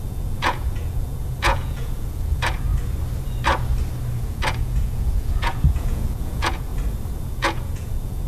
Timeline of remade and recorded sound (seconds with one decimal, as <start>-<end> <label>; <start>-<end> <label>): 0.0-2.7 remade; 2.7-4.2 recorded; 4.2-6.7 remade; 6.7-7.3 recorded; 7.3-8.3 remade